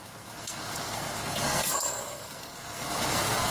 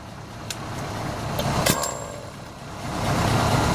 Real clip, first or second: second